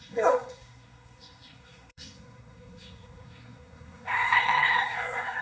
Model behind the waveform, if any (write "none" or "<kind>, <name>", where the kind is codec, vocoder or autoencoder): codec, SNAC